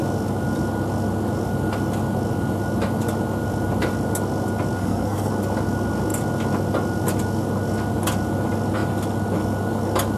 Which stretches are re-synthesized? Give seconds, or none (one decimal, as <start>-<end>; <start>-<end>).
4.8-5.3